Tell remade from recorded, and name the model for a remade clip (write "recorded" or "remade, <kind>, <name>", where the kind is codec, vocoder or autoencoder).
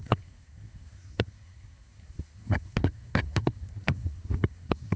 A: remade, codec, SNAC